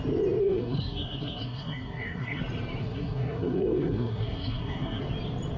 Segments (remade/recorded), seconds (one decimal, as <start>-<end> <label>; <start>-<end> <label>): 0.0-0.4 recorded; 0.4-2.4 remade; 2.4-2.8 recorded; 2.8-5.0 remade; 5.0-5.6 recorded